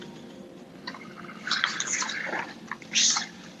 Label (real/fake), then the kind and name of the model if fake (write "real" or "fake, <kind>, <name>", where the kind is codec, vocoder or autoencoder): fake, vocoder, BigVGAN v2